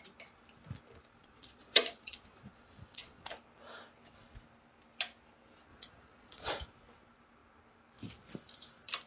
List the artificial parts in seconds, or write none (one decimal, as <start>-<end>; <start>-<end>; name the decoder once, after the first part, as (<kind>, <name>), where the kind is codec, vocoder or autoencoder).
1.2-3.2 (vocoder, Vocos); 5.7-6.5